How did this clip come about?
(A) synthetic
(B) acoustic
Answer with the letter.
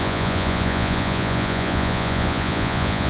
A